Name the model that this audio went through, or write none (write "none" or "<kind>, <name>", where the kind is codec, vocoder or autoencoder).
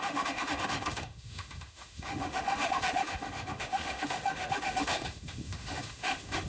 autoencoder, DAC-VAE